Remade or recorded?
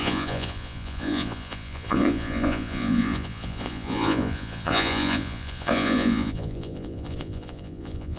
remade